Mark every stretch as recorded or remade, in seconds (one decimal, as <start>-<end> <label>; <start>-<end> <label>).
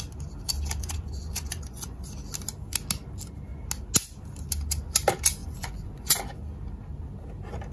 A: 0.0-0.8 recorded; 0.8-2.1 remade; 2.1-5.4 recorded; 5.4-6.2 remade; 6.2-7.7 recorded